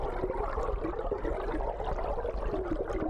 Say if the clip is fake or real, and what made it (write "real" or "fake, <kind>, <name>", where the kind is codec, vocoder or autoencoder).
real